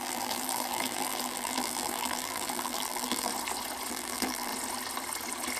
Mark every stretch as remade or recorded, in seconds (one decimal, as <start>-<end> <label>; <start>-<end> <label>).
0.0-3.3 remade; 3.3-3.9 recorded; 3.9-4.5 remade; 4.5-5.6 recorded